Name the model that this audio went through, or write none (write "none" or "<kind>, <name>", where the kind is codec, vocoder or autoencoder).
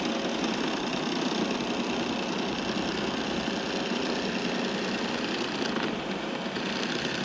none